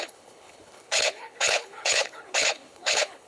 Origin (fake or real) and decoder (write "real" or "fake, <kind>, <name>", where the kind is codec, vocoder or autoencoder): fake, codec, HILCodec